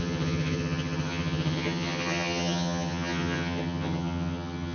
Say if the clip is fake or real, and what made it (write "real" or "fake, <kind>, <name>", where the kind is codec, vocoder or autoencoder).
fake, vocoder, HiFi-GAN